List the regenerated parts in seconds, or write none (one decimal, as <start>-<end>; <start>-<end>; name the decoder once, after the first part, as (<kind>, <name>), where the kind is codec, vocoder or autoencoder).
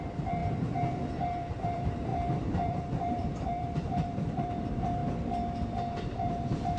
0.0-5.0 (vocoder, BigVGAN v2); 5.9-6.8